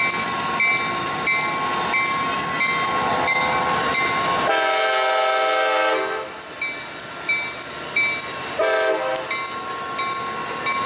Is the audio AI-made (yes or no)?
no